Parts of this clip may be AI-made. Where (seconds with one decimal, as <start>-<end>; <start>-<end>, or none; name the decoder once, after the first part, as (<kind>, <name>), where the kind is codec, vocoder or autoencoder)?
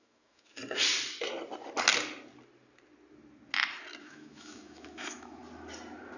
0.0-0.6 (autoencoder, DAC-VAE); 4.0-5.4